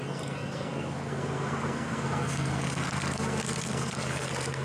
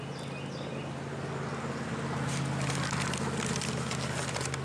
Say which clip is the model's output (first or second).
first